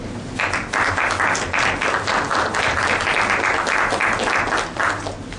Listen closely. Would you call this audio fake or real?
real